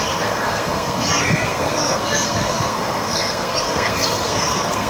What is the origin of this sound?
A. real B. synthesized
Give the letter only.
B